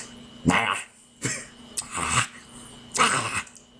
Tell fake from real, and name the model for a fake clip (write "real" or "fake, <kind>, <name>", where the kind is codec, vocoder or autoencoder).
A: real